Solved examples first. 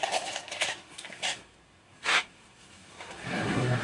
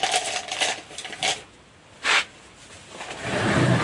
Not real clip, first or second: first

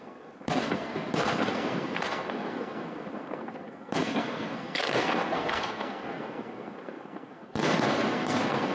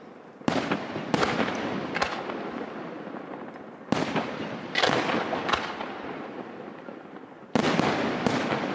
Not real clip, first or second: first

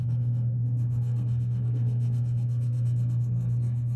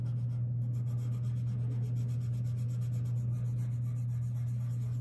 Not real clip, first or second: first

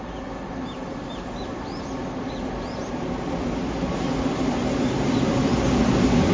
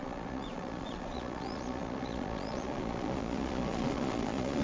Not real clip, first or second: second